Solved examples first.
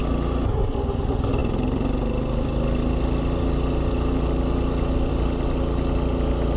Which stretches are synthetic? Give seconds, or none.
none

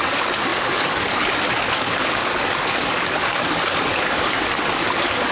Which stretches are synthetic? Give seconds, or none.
0.0-5.3 (codec, DAC)

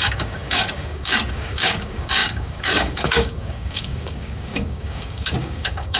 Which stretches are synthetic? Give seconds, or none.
0.0-6.0 (codec, DAC)

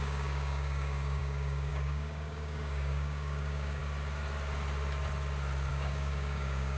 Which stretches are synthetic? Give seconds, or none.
0.0-3.8 (codec, DAC); 5.7-6.8